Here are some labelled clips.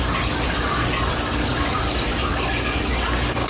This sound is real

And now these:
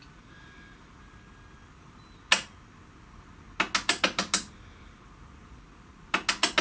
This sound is real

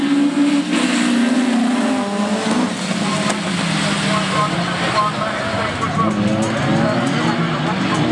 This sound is real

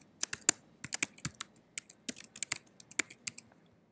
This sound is real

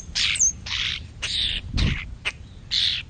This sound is fake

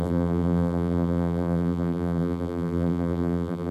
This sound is fake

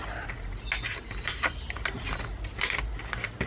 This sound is real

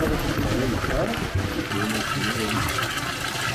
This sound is real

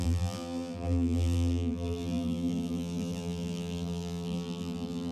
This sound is fake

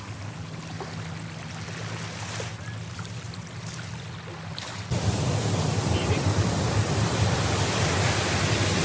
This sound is real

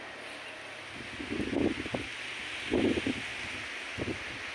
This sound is real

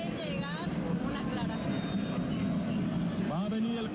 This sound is real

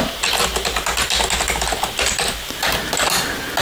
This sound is real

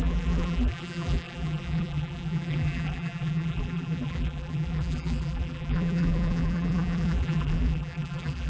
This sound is fake